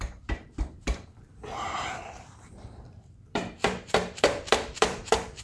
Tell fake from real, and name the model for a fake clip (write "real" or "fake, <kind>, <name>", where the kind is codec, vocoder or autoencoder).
fake, vocoder, BigVGAN v2